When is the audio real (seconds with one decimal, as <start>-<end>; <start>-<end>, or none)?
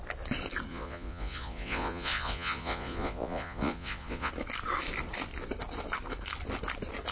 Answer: 0.0-0.7; 4.3-7.1